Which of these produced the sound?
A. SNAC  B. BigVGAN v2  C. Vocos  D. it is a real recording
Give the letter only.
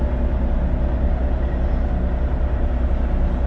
D